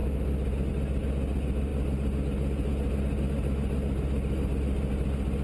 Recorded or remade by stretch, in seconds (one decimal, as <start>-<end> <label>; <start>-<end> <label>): 0.0-5.4 recorded